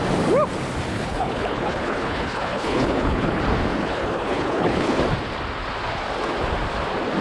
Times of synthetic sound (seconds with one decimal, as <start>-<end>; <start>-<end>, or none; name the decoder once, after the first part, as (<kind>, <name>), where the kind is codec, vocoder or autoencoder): 0.9-3.4 (codec, HILCodec); 3.8-5.0

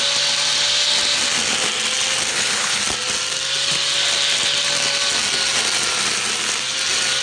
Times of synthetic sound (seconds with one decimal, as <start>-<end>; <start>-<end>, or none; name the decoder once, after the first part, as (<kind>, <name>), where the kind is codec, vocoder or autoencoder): 2.3-2.8 (codec, HILCodec)

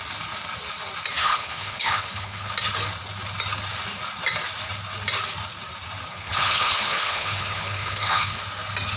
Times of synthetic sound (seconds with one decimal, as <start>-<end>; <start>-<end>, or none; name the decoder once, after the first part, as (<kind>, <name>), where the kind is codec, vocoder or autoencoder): 1.2-2.5 (codec, HILCodec); 6.1-8.4

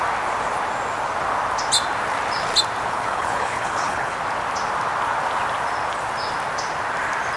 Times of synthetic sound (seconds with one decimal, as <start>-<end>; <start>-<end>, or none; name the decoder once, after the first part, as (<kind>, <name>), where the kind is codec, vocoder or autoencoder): 2.9-4.2 (codec, HILCodec)

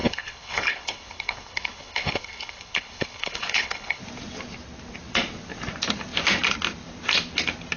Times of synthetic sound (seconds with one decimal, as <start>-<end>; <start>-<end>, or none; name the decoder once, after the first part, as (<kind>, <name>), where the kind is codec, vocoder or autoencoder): 0.0-4.0 (codec, HILCodec)